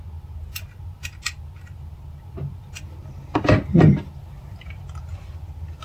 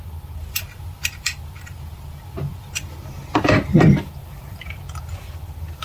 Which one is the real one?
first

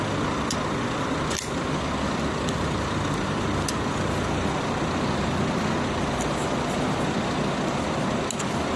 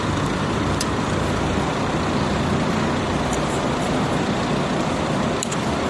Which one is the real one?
first